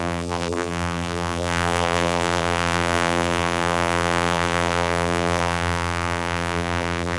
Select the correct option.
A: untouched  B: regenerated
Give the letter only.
B